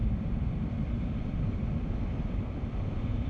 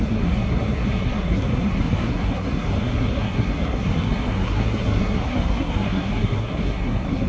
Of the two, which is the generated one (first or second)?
second